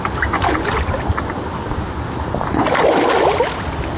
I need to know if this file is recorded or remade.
recorded